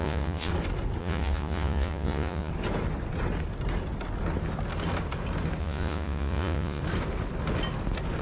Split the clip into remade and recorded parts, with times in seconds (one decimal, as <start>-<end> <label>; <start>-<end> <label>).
0.0-0.5 remade; 0.5-1.0 recorded; 1.0-2.5 remade; 2.5-5.6 recorded; 5.6-6.8 remade; 6.8-8.2 recorded